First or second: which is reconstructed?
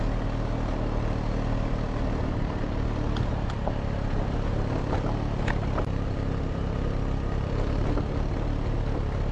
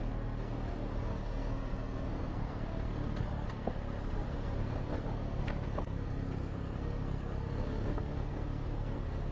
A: second